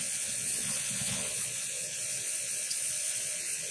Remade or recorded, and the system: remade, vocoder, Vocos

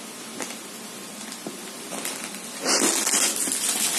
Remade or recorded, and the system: recorded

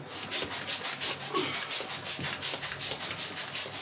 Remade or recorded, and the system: recorded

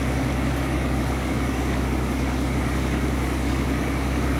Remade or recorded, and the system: remade, codec, DAC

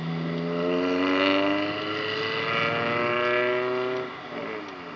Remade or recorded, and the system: recorded